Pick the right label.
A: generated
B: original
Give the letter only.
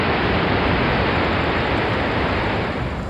B